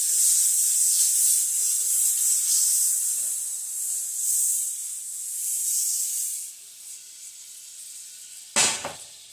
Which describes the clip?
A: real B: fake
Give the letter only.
A